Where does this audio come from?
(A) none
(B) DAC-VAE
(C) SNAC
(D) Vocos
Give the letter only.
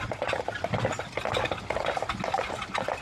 A